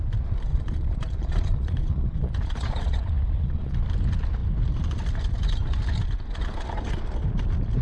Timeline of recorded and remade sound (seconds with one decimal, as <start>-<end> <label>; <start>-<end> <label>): 0.0-0.5 recorded; 0.5-3.8 remade; 3.8-7.8 recorded